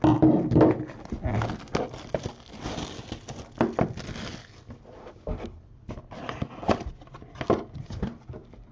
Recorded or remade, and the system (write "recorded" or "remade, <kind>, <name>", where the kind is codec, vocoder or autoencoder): recorded